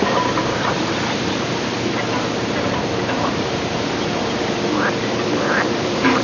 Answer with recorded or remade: remade